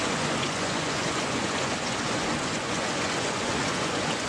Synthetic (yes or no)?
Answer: yes